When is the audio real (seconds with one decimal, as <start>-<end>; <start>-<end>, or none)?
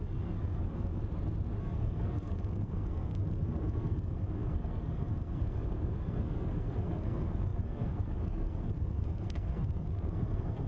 1.0-1.6